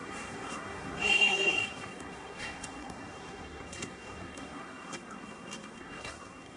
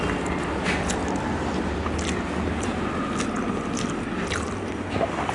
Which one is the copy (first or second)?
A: first